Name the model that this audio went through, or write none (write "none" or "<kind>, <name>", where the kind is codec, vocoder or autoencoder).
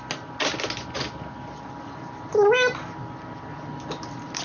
none